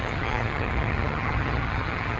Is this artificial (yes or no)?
yes